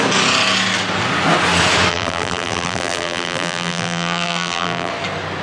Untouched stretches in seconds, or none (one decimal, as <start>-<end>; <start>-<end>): 0.0-1.9; 4.9-5.4